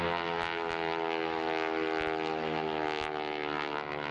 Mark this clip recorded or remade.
recorded